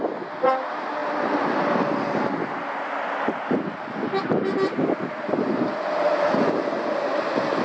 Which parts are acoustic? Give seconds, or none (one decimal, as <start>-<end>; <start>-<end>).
0.0-7.6